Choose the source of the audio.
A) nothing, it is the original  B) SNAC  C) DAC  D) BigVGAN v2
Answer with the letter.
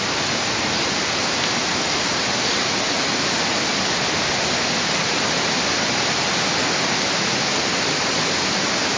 A